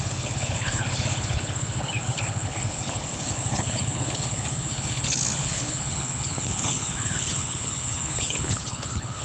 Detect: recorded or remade remade